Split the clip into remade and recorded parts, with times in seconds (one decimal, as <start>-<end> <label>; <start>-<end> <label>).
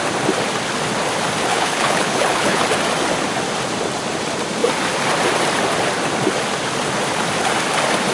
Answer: 0.0-1.5 recorded; 1.5-2.6 remade; 2.6-8.1 recorded